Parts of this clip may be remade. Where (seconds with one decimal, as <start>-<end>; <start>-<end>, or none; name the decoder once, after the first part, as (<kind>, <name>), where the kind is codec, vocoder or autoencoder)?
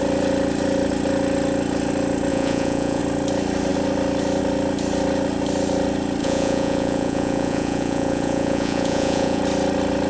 2.3-3.0 (vocoder, Vocos); 6.2-9.4